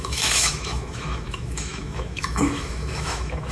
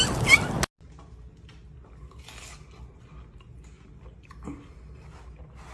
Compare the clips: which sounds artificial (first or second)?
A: first